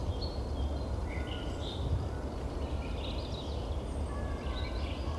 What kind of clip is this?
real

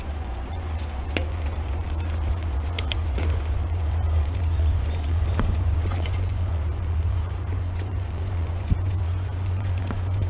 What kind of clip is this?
fake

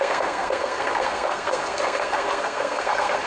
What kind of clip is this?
fake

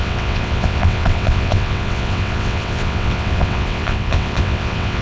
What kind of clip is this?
fake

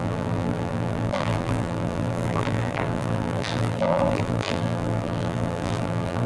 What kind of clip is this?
fake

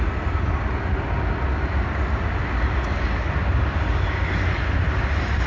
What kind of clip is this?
real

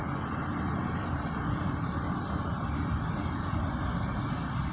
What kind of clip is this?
real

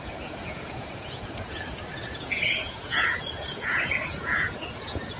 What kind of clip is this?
fake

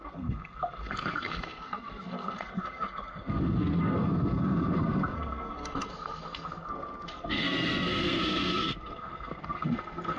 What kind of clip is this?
fake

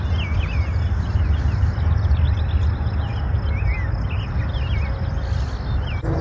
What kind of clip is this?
real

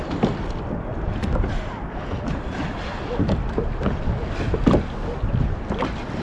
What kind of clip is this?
real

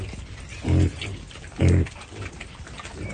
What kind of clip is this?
real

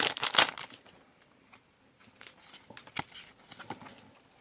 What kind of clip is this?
real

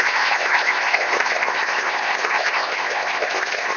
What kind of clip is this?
fake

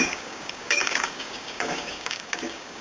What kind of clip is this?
fake